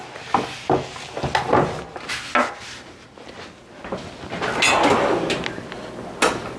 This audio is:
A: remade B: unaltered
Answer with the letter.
B